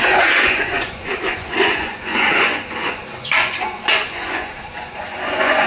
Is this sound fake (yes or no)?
yes